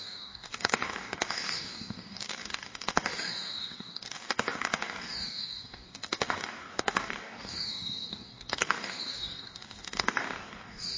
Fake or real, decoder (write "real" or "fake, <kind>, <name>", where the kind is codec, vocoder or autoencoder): fake, codec, DAC